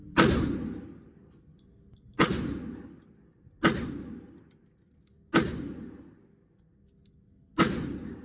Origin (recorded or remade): recorded